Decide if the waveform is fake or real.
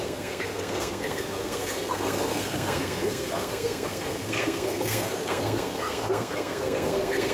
fake